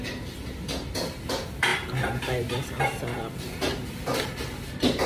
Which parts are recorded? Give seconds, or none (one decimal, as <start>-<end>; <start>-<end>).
none